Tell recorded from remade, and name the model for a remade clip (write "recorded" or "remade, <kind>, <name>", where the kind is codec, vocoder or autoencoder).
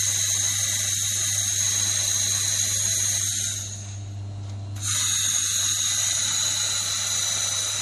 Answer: recorded